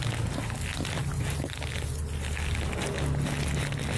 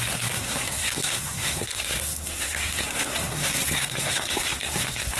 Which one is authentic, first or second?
first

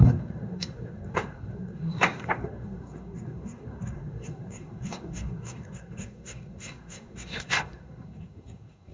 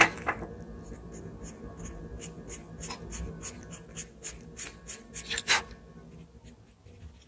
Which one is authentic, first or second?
second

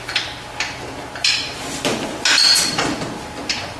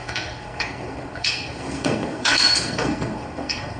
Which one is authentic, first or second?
first